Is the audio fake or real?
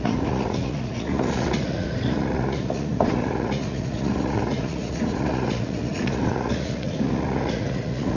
fake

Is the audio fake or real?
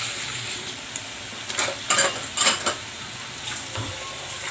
real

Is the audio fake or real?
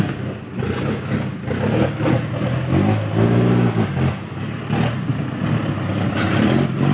real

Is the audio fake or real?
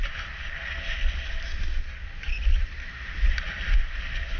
real